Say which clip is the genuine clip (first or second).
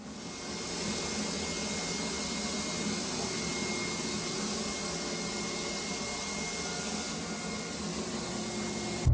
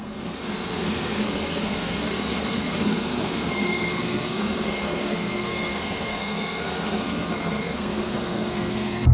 first